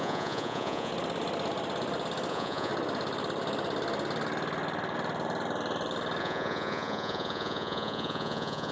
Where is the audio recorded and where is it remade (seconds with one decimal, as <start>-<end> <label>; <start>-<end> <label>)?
0.0-0.9 remade; 0.9-2.3 recorded; 2.3-2.7 remade; 2.7-6.2 recorded; 6.2-8.7 remade